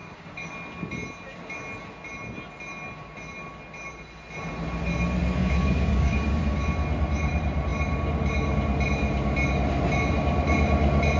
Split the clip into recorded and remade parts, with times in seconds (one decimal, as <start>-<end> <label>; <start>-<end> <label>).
0.0-0.5 remade; 0.5-5.4 recorded; 5.4-6.4 remade; 6.4-11.2 recorded